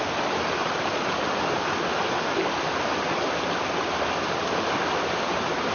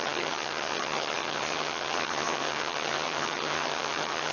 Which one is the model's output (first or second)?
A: second